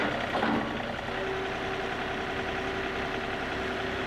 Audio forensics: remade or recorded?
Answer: recorded